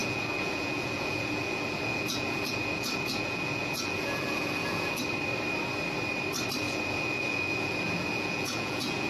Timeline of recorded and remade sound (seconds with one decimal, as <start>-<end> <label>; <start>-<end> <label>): 0.0-5.0 remade; 5.0-6.6 recorded; 6.6-9.1 remade